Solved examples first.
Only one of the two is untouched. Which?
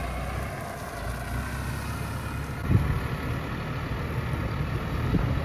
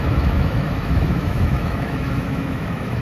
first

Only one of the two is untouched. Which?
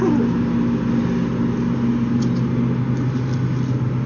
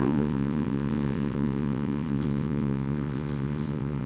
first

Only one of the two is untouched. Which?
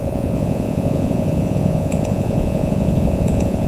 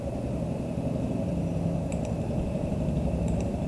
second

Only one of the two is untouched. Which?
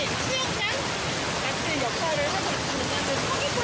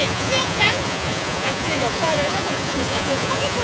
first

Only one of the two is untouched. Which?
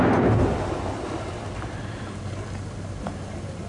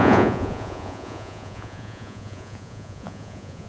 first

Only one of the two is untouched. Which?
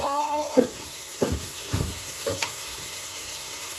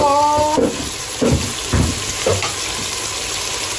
second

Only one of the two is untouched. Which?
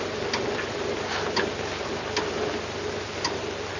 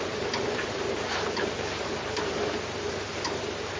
first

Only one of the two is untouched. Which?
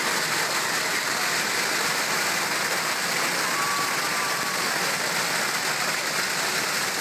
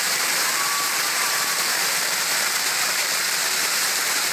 first